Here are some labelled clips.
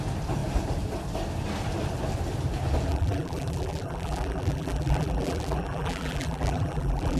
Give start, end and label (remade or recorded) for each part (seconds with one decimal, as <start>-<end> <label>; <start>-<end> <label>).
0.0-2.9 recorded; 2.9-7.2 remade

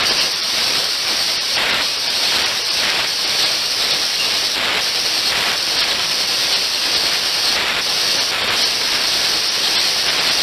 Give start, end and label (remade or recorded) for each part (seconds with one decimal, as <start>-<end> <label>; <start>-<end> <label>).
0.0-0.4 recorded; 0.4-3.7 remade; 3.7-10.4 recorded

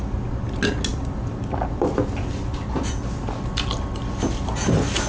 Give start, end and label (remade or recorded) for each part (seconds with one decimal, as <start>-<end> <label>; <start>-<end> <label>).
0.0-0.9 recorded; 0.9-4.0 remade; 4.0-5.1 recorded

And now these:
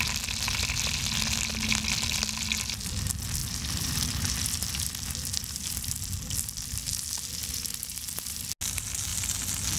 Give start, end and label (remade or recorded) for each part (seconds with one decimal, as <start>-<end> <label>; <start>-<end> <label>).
0.0-3.4 recorded; 3.4-6.0 remade; 6.0-7.4 recorded; 7.4-8.5 remade; 8.5-9.1 recorded; 9.1-9.8 remade

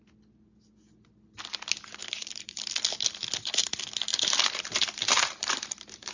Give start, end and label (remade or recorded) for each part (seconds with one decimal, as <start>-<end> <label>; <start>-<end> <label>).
0.0-2.0 recorded; 2.0-2.6 remade; 2.6-4.1 recorded; 4.1-6.1 remade

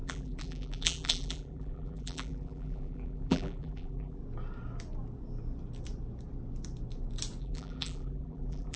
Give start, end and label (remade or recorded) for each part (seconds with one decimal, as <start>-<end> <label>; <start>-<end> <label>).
0.0-4.2 remade; 4.2-7.4 recorded; 7.4-8.8 remade